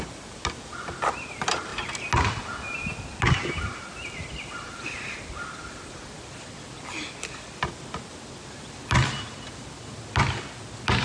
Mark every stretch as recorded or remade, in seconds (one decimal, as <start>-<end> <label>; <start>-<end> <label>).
0.0-11.0 recorded